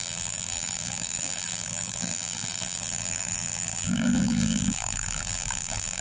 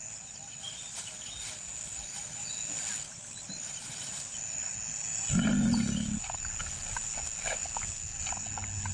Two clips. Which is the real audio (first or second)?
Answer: second